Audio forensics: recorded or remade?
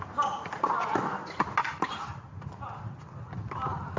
recorded